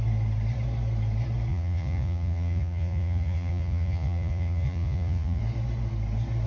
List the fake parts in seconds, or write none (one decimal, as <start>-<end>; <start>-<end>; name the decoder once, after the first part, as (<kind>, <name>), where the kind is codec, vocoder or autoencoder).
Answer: 1.5-5.4 (vocoder, Vocos)